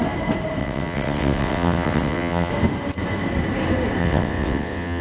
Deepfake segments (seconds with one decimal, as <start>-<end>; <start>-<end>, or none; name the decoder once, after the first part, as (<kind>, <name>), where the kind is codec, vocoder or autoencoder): 0.6-2.5 (vocoder, WaveNeXt); 4.0-5.0